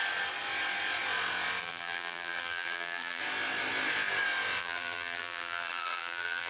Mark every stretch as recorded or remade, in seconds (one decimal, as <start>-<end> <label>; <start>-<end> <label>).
0.0-1.6 recorded; 1.6-3.2 remade; 3.2-4.6 recorded; 4.6-6.5 remade